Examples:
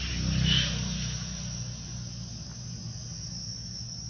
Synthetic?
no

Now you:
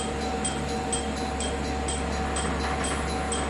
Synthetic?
no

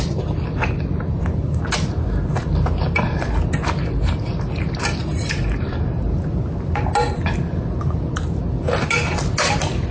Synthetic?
no